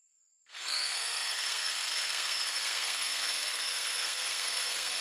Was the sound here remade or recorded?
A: remade